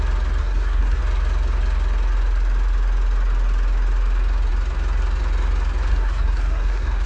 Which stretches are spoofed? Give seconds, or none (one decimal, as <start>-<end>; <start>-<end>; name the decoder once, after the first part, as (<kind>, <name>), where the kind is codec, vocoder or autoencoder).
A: 0.4-1.0 (codec, SNAC); 5.9-7.1